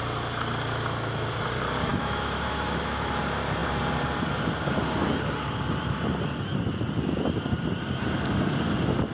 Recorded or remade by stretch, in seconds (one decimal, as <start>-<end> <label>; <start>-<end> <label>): 0.0-1.9 recorded; 1.9-3.2 remade; 3.2-9.1 recorded